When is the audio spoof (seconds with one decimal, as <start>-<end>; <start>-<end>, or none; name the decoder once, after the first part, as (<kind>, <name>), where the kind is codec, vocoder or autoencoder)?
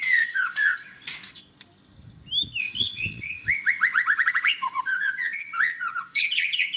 0.0-1.4 (vocoder, WaveNeXt); 2.6-6.8